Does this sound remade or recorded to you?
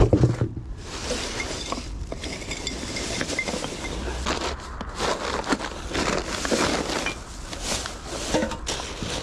recorded